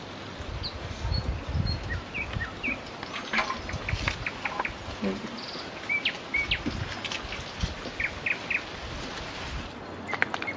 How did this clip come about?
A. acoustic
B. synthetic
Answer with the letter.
A